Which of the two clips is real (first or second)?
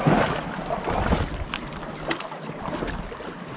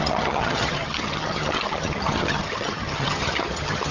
first